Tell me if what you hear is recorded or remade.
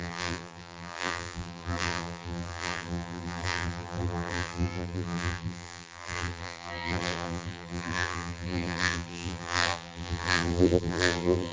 remade